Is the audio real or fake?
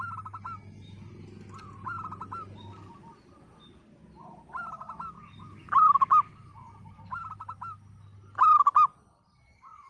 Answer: real